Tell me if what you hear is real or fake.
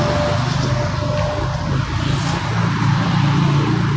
real